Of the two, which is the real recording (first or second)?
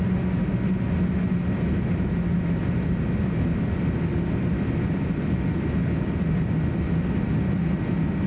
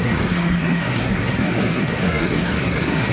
first